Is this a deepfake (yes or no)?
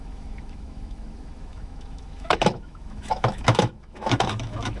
yes